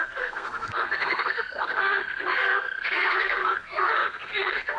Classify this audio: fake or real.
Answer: fake